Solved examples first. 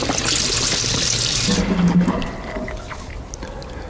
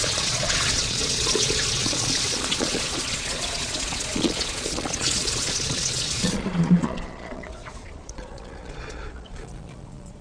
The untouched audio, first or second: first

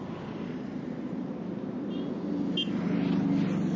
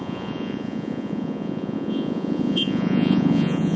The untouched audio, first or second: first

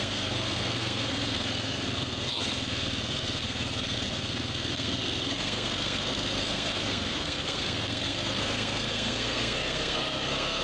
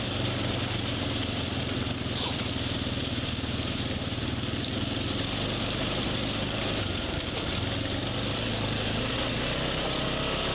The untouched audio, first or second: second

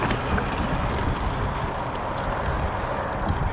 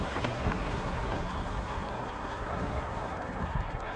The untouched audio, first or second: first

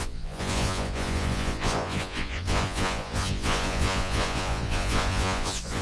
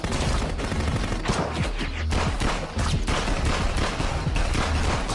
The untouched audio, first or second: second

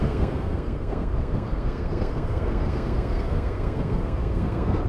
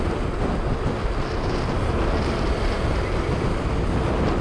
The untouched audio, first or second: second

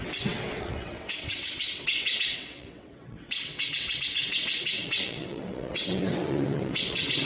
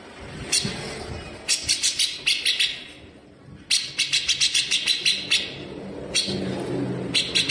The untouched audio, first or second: second